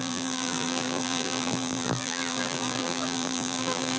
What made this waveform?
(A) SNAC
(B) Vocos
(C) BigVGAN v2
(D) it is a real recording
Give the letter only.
C